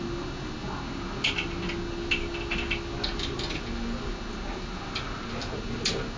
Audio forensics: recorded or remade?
recorded